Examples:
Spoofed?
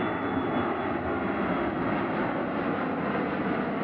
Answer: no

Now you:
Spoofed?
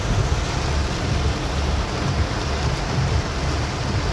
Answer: no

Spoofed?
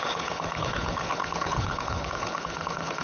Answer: yes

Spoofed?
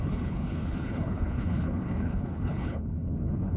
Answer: yes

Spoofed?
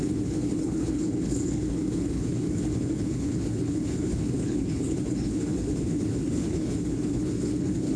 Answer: yes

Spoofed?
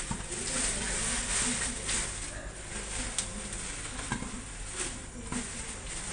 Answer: no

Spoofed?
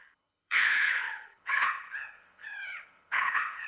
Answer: yes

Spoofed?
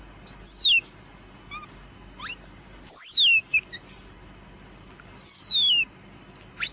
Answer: no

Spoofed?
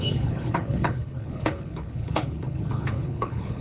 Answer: yes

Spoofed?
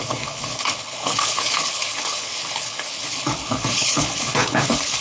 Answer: yes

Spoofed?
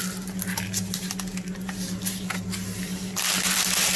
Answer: no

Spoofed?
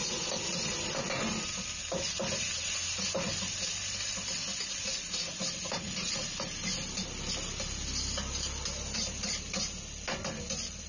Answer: no